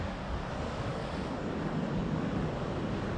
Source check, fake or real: fake